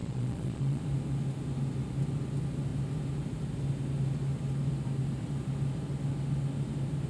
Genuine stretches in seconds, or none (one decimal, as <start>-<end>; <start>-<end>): 0.8-7.1